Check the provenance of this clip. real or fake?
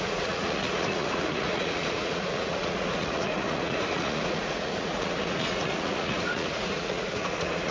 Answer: fake